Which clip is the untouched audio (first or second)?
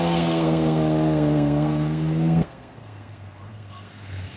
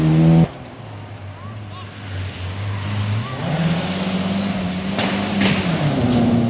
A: second